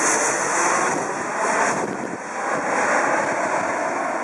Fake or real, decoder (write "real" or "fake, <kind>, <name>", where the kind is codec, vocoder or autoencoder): real